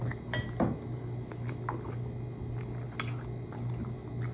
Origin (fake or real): real